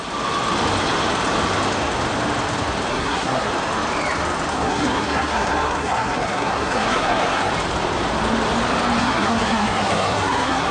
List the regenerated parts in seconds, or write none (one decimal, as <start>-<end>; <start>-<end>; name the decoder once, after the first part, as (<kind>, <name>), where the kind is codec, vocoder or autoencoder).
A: 2.9-3.5 (codec, SNAC); 4.5-7.5; 9.0-10.7